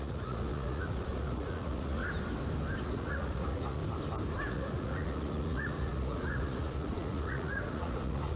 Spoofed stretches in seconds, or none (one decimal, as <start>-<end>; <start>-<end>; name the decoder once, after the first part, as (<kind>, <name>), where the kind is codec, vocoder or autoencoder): 0.0-2.0 (vocoder, Vocos); 2.8-3.8; 4.5-8.4